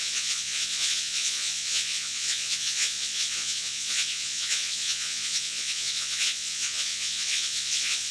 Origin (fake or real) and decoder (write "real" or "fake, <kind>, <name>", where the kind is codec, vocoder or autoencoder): fake, vocoder, Vocos